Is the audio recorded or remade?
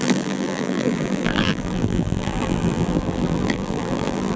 remade